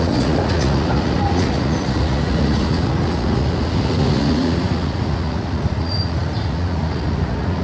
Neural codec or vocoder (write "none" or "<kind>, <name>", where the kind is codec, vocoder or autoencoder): vocoder, Vocos